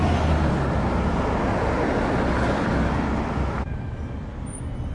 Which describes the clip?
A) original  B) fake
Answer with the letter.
A